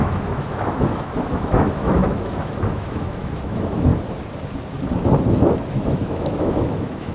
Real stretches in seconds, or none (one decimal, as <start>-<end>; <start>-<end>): 3.9-5.7